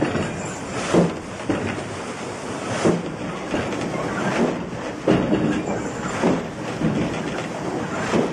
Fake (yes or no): no